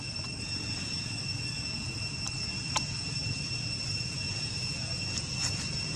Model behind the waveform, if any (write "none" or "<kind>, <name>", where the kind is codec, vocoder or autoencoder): none